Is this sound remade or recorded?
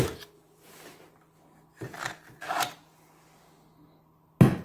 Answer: recorded